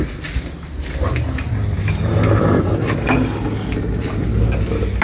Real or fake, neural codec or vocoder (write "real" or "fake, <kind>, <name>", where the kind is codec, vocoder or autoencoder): real